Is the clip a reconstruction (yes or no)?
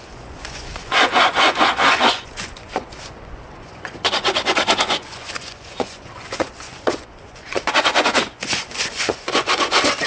yes